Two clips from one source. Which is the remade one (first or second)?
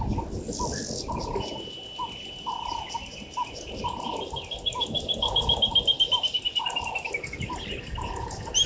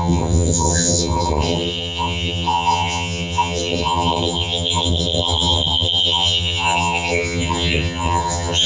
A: second